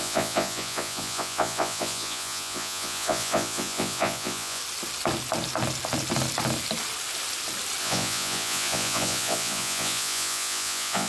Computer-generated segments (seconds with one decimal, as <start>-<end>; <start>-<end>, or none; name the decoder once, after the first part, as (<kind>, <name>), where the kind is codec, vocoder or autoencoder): 0.0-4.6 (vocoder, Vocos); 7.8-11.1